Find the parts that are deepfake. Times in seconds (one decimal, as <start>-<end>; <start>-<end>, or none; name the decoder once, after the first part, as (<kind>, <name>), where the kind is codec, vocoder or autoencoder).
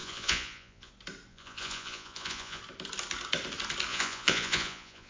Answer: 0.0-0.9 (vocoder, Vocos); 1.3-2.6; 3.9-5.1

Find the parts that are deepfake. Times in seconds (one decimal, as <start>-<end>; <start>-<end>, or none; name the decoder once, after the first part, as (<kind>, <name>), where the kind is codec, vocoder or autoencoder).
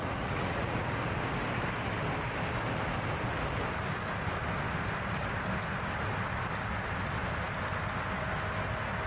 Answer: 0.0-1.0 (vocoder, Vocos)